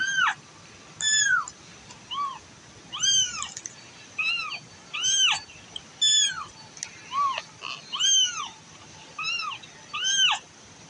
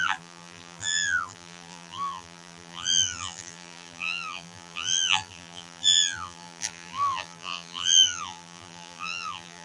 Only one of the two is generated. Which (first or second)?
second